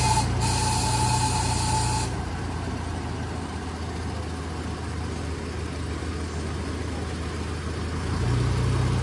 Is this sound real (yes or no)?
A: yes